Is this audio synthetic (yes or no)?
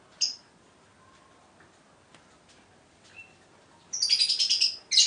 no